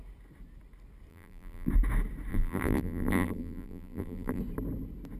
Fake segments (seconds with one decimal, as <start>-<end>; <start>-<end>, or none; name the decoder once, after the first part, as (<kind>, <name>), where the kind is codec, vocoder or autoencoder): 1.1-1.7 (vocoder, BigVGAN v2); 2.3-4.4